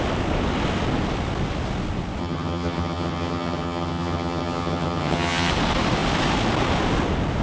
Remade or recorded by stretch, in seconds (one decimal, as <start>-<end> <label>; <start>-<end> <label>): 0.0-2.2 recorded; 2.2-5.5 remade; 5.5-7.4 recorded